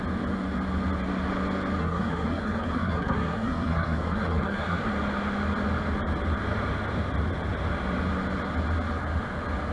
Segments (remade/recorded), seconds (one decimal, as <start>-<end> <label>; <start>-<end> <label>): 0.0-1.8 recorded; 1.8-4.9 remade; 4.9-9.7 recorded